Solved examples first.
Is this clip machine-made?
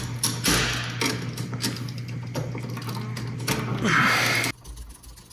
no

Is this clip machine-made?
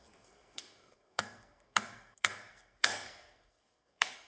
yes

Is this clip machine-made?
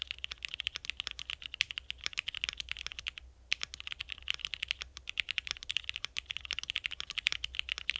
no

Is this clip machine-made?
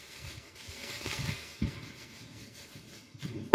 yes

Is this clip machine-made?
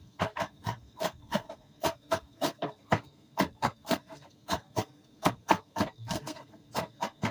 yes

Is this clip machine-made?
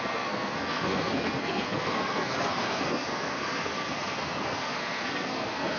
yes